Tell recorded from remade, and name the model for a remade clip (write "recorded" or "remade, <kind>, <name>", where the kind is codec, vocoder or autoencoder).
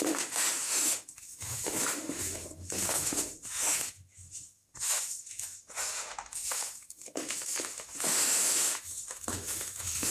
remade, autoencoder, DAC-VAE